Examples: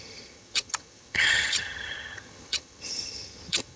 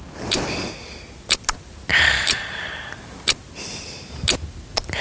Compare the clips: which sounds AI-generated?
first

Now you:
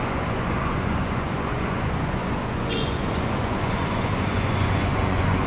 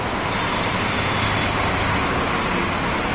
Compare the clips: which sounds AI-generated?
first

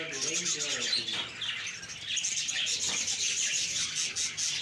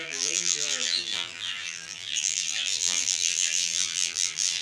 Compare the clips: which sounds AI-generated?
second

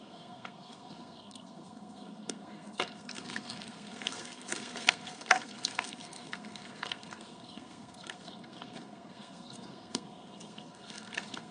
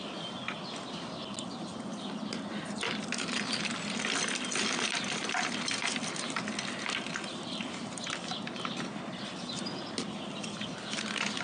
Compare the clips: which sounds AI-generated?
first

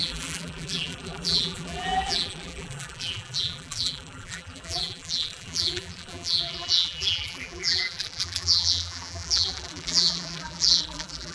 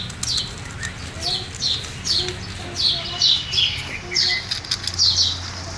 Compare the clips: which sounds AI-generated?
first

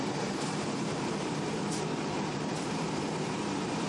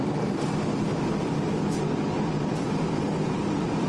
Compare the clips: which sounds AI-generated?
first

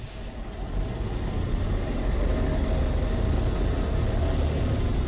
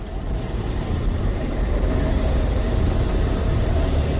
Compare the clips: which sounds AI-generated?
second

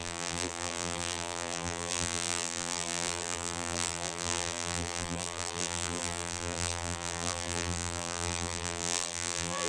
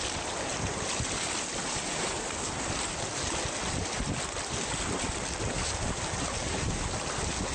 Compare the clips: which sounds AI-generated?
first